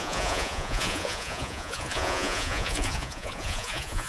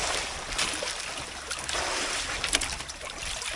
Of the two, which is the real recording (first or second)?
second